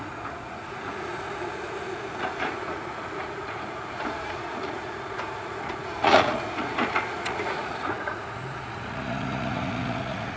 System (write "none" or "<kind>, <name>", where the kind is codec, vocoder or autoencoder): vocoder, Vocos